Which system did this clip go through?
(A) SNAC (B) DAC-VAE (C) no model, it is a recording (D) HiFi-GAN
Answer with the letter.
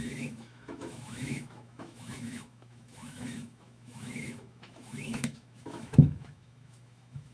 B